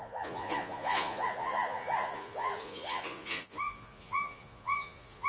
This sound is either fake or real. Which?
fake